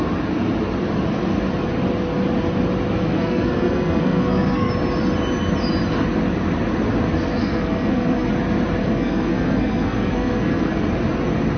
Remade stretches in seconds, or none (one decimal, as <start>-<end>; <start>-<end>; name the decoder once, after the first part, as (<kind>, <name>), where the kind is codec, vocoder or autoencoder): 3.0-4.7 (codec, SNAC); 7.4-8.3; 8.8-10.8